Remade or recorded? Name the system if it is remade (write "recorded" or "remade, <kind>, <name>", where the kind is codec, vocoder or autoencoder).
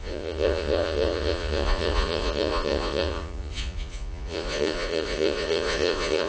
remade, vocoder, Vocos